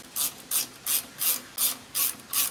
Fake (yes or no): no